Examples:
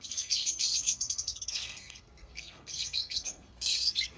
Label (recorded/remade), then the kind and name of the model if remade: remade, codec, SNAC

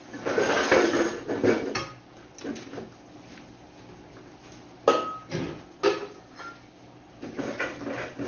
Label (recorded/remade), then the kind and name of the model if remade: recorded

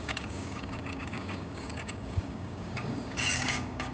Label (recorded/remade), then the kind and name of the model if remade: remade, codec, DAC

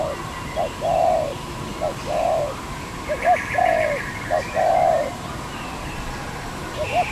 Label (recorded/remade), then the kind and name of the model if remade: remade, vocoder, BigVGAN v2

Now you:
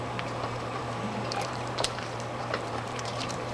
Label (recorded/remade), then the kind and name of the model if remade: remade, vocoder, BigVGAN v2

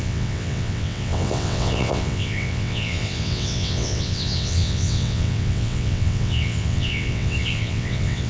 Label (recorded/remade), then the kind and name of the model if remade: remade, vocoder, WaveNeXt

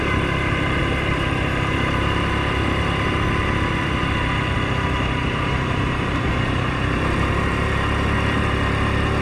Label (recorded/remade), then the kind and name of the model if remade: remade, vocoder, BigVGAN v2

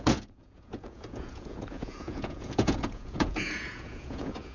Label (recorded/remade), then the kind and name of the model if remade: remade, vocoder, Vocos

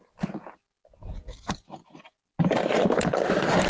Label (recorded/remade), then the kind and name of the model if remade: recorded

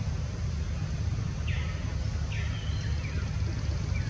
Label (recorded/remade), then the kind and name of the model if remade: recorded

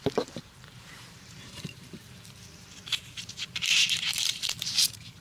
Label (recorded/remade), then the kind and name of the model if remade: remade, vocoder, BigVGAN v2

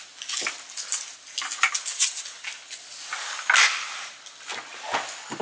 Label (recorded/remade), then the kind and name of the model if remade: recorded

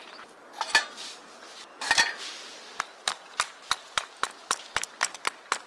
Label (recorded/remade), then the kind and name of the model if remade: recorded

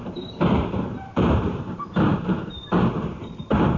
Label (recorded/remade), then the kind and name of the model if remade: remade, vocoder, BigVGAN v2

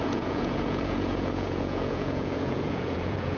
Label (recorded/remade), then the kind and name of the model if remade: remade, vocoder, Vocos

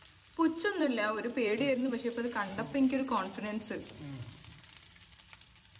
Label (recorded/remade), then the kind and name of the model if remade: remade, vocoder, BigVGAN v2